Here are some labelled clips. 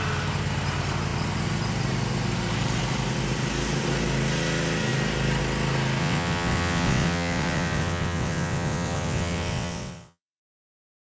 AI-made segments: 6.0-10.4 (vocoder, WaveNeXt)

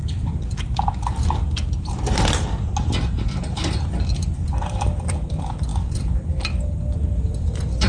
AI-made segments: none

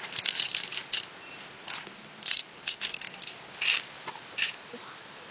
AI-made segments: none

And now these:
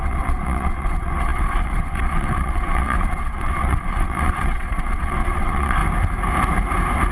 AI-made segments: 0.0-5.8 (vocoder, WaveNeXt)

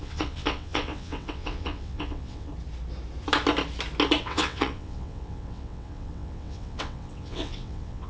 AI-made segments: 0.0-2.5 (vocoder, WaveNeXt); 4.2-8.1

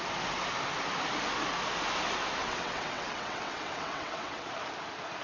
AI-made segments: 2.4-4.5 (vocoder, WaveNeXt)